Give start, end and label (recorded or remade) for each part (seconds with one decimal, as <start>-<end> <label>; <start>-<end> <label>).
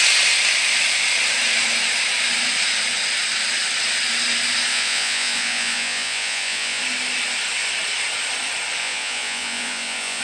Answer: 0.0-4.7 recorded; 4.7-6.8 remade; 6.8-8.8 recorded; 8.8-10.2 remade